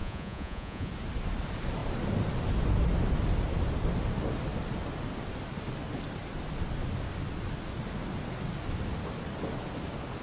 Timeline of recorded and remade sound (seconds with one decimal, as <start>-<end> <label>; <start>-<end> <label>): 0.0-0.9 remade; 0.9-10.2 recorded

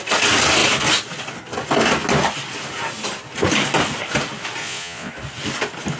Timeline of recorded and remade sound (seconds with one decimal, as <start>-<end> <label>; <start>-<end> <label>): 0.0-4.6 recorded; 4.6-5.1 remade; 5.1-6.0 recorded

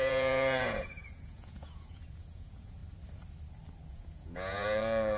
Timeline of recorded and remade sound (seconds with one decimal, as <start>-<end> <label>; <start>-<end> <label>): 0.0-2.8 remade; 2.8-3.9 recorded; 3.9-5.2 remade